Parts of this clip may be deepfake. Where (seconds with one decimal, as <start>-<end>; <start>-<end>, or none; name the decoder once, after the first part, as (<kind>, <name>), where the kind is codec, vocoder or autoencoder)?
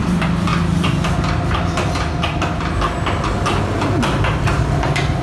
0.0-0.5 (vocoder, BigVGAN v2); 3.6-5.2